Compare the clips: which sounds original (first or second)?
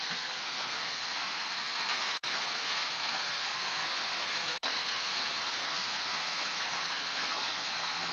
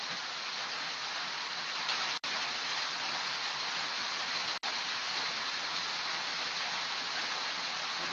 second